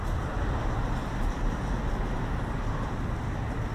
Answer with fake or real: real